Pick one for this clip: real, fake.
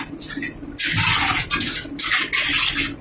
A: real